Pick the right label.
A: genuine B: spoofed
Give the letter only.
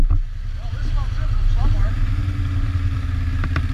A